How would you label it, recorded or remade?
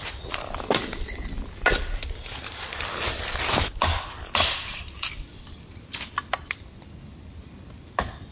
recorded